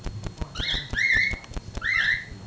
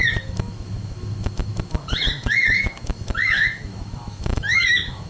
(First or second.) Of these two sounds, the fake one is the second